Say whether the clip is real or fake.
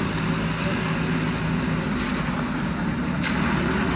real